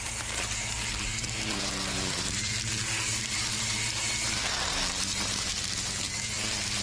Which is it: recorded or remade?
remade